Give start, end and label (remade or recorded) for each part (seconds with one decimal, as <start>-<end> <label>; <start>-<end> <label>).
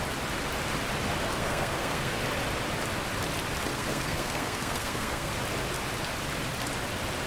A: 0.0-1.3 recorded; 1.3-2.2 remade; 2.2-3.7 recorded; 3.7-5.3 remade; 5.3-7.3 recorded